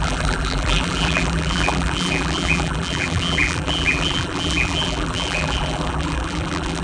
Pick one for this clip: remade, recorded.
remade